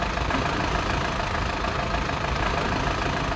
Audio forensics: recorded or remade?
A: recorded